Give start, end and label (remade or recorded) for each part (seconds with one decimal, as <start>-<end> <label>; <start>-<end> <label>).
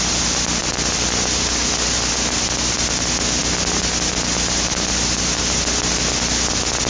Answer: 0.0-6.9 recorded